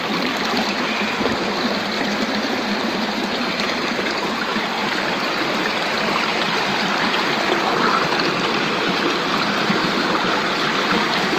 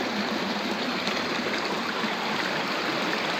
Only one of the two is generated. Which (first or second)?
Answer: second